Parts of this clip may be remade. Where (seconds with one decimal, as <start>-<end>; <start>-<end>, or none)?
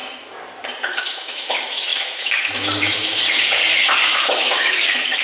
1.0-3.2; 4.1-5.2